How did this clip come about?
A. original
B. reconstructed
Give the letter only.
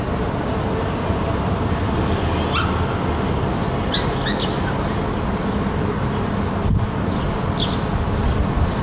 A